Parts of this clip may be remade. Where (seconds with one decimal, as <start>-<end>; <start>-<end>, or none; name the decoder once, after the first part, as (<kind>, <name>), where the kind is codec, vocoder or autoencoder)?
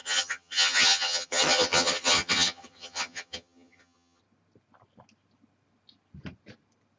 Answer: 0.0-4.2 (vocoder, HiFi-GAN)